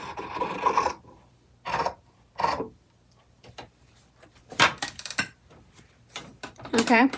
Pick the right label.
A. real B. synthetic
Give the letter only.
B